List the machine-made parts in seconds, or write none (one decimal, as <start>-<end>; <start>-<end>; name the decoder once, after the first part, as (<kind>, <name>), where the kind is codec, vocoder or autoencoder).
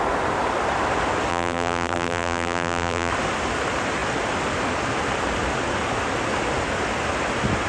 1.3-3.1 (vocoder, BigVGAN v2)